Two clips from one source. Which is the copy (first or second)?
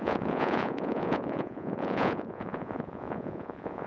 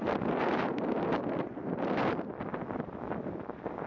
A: first